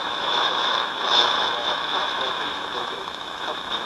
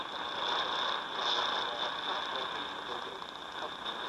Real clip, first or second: second